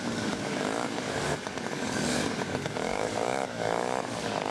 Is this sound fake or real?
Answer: fake